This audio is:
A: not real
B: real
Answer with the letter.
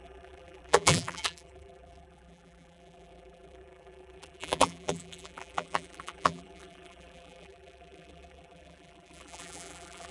A